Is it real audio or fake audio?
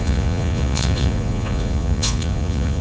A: fake